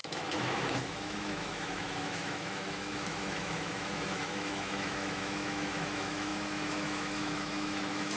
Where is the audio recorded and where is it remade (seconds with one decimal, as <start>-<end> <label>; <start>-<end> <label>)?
0.0-8.2 remade